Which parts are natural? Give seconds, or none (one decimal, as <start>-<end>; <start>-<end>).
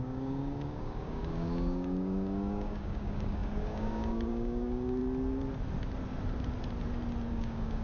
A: 5.0-7.3